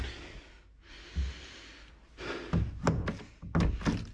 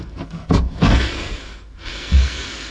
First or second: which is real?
first